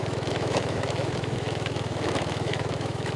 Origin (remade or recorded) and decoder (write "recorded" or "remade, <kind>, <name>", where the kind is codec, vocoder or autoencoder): remade, autoencoder, DAC-VAE